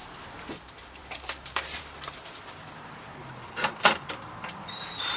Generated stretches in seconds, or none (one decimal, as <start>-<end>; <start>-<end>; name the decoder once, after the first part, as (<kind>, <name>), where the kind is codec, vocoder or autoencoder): 0.5-5.2 (vocoder, BigVGAN v2)